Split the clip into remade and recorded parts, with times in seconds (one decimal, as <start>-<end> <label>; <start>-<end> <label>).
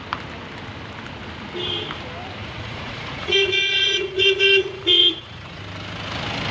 0.0-2.4 recorded; 2.4-5.6 remade; 5.6-6.5 recorded